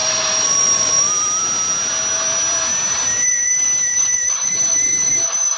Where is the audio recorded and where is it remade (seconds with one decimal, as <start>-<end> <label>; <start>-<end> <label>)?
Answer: 0.0-5.6 remade